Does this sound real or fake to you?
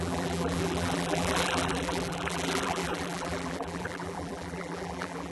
fake